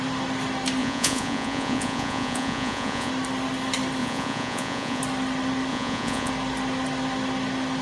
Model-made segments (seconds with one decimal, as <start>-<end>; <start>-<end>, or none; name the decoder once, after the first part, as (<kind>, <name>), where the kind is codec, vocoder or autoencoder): 0.8-3.1 (vocoder, Vocos); 4.0-5.0; 5.7-6.3